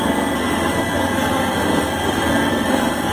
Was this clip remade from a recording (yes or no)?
yes